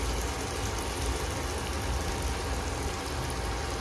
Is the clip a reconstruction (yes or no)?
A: no